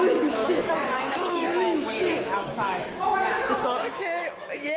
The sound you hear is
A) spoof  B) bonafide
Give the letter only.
A